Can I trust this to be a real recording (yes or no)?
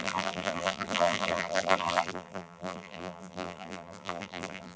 no